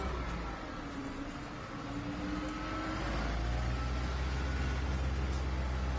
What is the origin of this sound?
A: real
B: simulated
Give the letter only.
A